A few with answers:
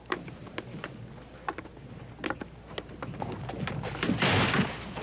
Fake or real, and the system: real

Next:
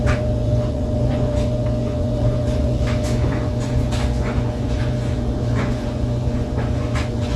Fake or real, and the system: fake, vocoder, Vocos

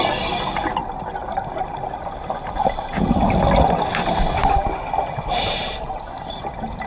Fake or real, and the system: real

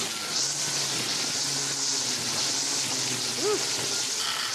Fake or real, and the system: real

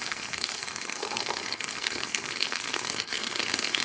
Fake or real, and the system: fake, codec, SNAC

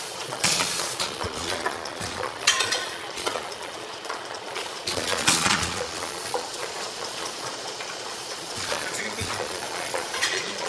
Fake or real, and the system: fake, vocoder, Vocos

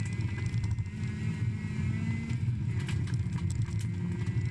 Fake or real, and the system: real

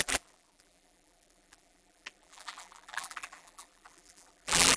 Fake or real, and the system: fake, vocoder, BigVGAN v2